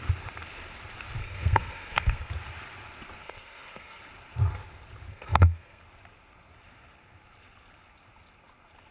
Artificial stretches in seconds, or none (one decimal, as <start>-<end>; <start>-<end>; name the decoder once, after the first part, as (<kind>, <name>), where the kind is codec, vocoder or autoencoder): 1.2-2.3 (codec, SNAC); 3.2-4.0; 5.1-5.8